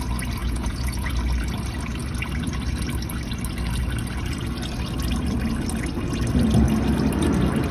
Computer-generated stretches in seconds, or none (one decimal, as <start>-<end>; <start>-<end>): 0.4-1.1